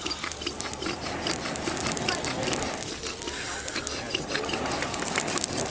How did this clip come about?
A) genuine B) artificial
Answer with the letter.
A